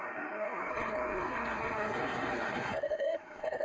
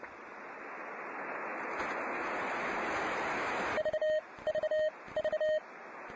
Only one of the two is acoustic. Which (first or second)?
second